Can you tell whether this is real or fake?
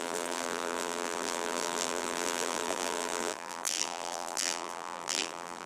fake